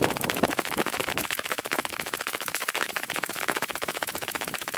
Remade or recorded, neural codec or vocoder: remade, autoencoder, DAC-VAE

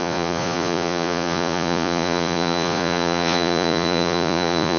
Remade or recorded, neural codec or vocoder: remade, vocoder, Vocos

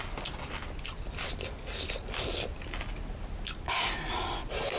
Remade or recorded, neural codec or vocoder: recorded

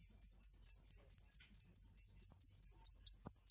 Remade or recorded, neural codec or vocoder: recorded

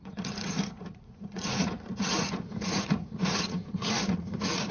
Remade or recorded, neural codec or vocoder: remade, vocoder, Vocos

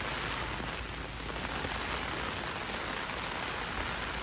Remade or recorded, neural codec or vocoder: recorded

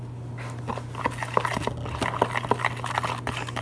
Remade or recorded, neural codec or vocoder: recorded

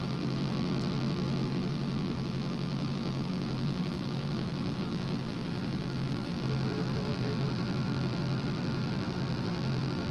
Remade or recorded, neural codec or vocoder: remade, vocoder, BigVGAN v2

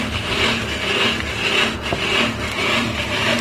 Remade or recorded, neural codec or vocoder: recorded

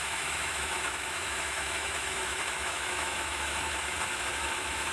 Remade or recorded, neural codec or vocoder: remade, autoencoder, DAC-VAE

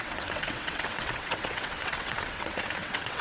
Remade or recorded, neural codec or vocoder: remade, vocoder, WaveNeXt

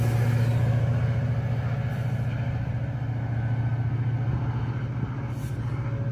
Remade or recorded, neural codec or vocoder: recorded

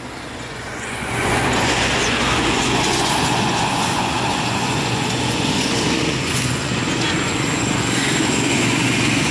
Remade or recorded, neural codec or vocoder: remade, vocoder, Vocos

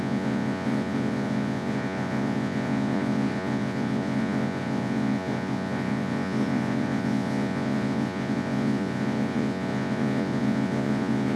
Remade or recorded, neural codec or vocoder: remade, vocoder, Vocos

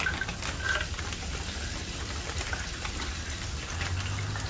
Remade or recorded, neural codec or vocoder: recorded